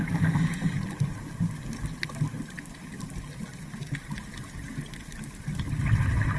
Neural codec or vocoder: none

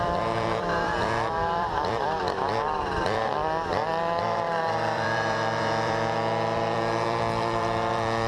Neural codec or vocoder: vocoder, BigVGAN v2